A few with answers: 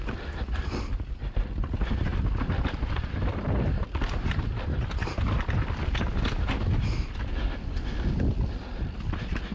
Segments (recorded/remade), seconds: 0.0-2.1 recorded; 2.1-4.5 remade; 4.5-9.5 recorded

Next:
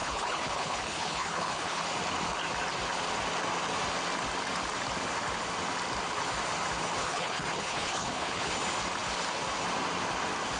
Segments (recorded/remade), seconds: 0.0-1.8 remade; 1.8-7.0 recorded; 7.0-8.5 remade; 8.5-10.6 recorded